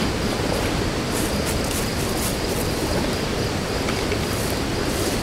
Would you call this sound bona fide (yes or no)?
yes